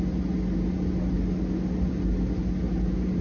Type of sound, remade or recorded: recorded